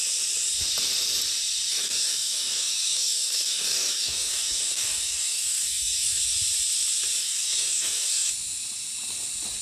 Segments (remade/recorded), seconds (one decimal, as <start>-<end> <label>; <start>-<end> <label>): 0.0-1.7 recorded; 1.7-6.2 remade; 6.2-7.2 recorded; 7.2-8.3 remade; 8.3-9.6 recorded